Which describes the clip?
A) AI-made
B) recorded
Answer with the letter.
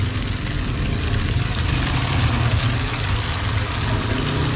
B